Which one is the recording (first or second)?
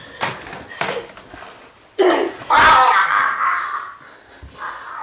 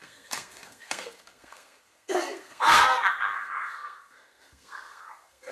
first